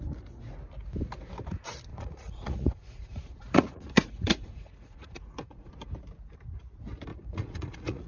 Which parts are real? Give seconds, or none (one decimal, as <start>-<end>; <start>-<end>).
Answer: 0.0-1.9; 5.7-7.1